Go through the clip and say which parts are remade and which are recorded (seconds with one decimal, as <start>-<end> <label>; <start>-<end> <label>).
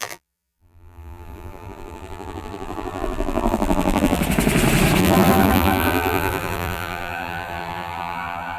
0.0-4.2 remade; 4.2-5.0 recorded; 5.0-8.6 remade